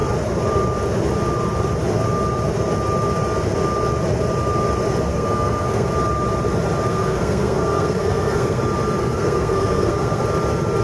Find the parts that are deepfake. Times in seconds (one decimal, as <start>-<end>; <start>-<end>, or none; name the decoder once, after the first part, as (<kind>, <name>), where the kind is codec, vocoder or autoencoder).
5.1-5.9 (codec, SNAC); 6.9-8.6; 9.0-10.2